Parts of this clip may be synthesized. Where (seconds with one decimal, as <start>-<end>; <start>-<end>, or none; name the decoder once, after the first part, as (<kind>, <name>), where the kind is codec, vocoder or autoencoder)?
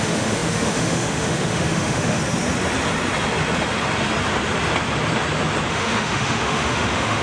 0.0-2.2 (autoencoder, DAC-VAE); 5.7-7.2